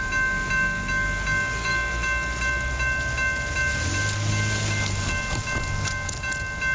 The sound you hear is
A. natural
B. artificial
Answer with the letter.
A